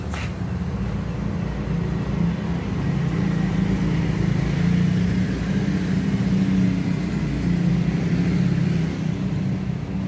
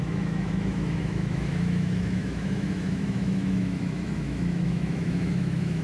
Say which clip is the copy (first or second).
second